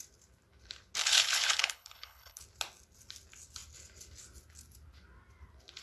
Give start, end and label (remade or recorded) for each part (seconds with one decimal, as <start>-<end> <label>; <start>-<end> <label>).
0.0-1.0 recorded; 1.0-2.4 remade; 2.4-5.8 recorded